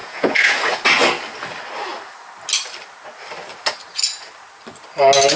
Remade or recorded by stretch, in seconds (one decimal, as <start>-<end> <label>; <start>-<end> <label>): 0.0-0.6 remade; 0.6-5.4 recorded